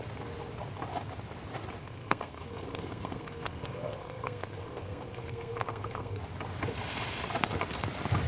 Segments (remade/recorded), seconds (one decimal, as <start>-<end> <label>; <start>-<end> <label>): 0.0-1.8 recorded; 1.8-6.2 remade; 6.2-8.3 recorded